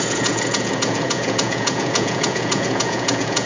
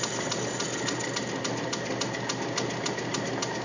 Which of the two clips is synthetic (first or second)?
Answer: first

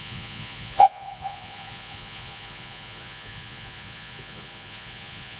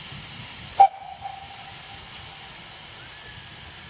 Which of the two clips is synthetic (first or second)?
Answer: first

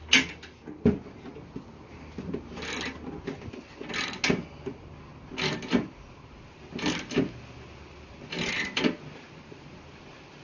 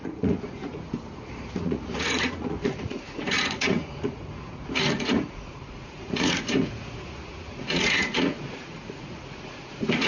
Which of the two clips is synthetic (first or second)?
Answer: second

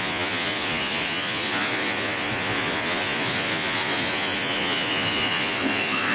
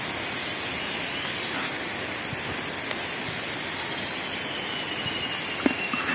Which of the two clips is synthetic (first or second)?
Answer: first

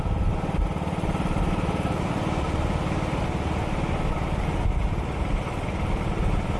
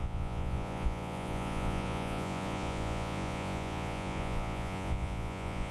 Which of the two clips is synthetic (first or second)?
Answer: second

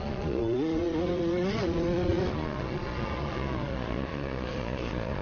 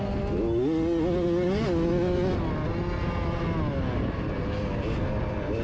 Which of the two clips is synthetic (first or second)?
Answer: first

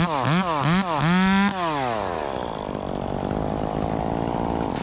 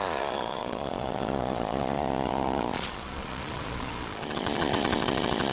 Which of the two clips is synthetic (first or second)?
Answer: second